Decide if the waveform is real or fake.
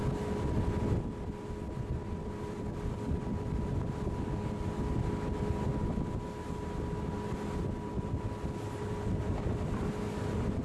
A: real